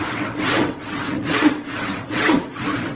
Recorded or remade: remade